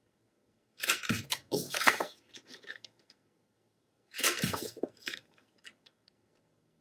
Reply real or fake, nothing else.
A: fake